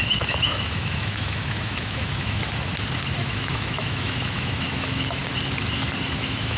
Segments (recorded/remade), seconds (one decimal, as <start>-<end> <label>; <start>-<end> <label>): 0.0-2.7 remade; 2.7-3.2 recorded; 3.2-5.2 remade; 5.2-6.1 recorded; 6.1-6.6 remade